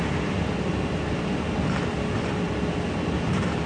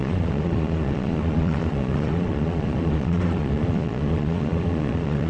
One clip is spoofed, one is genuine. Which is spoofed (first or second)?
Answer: second